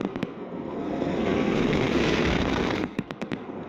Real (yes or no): no